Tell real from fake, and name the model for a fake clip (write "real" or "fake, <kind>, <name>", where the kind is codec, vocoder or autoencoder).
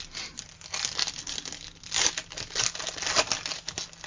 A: real